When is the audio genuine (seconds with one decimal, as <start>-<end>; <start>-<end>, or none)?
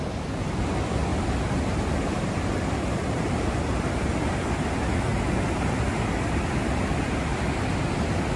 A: 0.0-1.1; 4.6-8.4